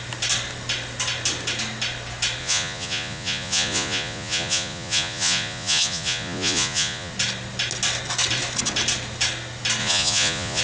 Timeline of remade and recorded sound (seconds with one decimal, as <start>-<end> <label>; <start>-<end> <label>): 0.0-2.4 recorded; 2.4-7.1 remade; 7.1-9.8 recorded; 9.8-10.6 remade